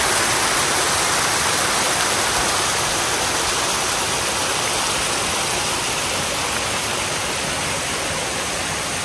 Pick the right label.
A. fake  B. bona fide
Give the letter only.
B